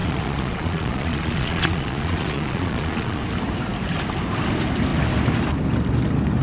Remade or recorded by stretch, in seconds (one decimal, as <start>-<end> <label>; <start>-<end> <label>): 0.0-3.2 remade; 3.2-6.4 recorded